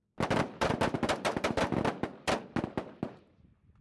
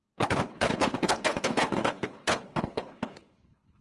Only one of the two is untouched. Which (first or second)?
first